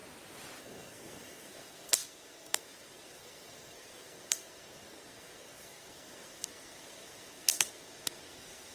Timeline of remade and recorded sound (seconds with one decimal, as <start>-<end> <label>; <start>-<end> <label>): 0.0-0.6 recorded; 0.6-8.7 remade